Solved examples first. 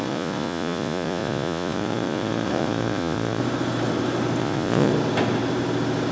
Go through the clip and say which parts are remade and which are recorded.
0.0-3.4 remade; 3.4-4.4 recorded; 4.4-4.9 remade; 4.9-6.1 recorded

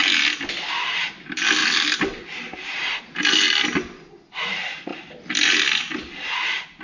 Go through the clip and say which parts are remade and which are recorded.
0.0-6.8 recorded

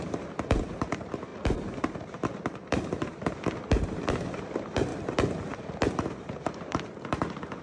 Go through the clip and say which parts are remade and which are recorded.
0.0-4.9 remade; 4.9-5.9 recorded; 5.9-7.6 remade

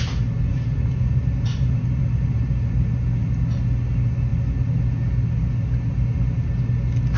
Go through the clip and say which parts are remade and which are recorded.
0.0-0.5 recorded; 0.5-2.7 remade; 2.7-7.2 recorded